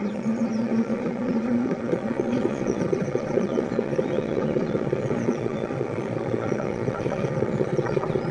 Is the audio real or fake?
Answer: fake